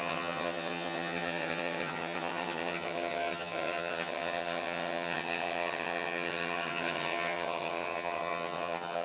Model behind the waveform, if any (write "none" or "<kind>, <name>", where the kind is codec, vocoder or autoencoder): vocoder, HiFi-GAN